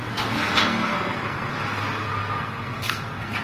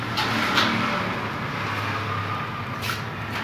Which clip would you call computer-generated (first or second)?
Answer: first